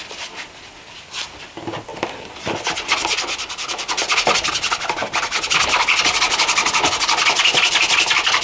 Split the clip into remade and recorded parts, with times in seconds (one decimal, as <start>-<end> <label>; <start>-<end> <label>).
0.0-1.9 recorded; 1.9-3.5 remade; 3.5-8.4 recorded